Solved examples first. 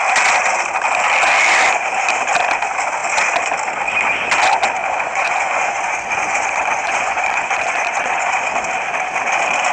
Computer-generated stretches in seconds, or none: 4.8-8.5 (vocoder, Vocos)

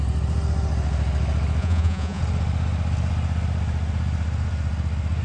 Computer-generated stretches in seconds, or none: 1.6-2.2 (vocoder, Vocos)

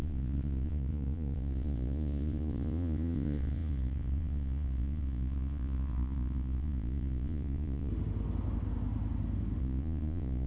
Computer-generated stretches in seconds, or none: 0.0-7.9 (vocoder, Vocos); 9.6-10.5

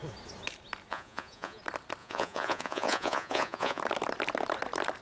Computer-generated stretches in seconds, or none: 0.9-1.6 (vocoder, Vocos); 2.0-3.8